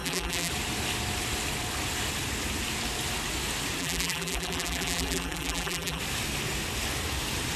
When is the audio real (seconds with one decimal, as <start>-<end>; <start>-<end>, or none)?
0.5-3.8; 6.0-7.6